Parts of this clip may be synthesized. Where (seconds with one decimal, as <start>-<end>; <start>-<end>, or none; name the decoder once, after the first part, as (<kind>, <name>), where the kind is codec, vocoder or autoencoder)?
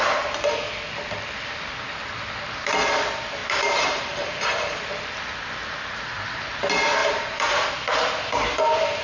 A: 3.4-4.9 (vocoder, BigVGAN v2); 7.0-7.7